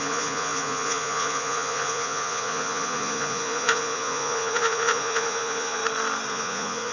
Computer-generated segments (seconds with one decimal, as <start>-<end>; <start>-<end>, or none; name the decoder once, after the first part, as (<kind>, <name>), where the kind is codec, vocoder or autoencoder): 0.0-5.8 (vocoder, Vocos); 6.3-6.9